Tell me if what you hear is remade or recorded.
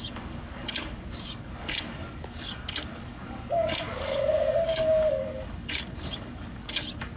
remade